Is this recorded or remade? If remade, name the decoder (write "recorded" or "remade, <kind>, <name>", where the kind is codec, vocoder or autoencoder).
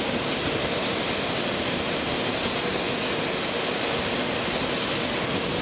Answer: recorded